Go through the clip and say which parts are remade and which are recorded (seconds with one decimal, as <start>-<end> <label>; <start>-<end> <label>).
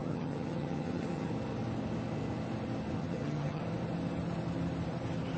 0.0-1.3 remade; 1.3-3.0 recorded; 3.0-3.6 remade; 3.6-5.4 recorded